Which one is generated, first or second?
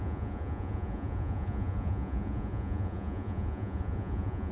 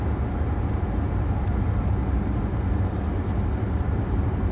first